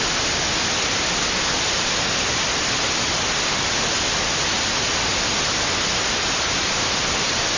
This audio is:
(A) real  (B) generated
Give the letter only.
A